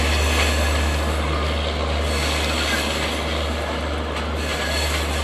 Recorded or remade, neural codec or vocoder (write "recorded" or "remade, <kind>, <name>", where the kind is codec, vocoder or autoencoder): recorded